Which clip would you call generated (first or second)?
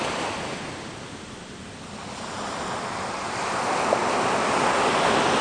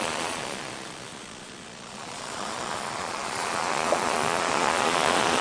second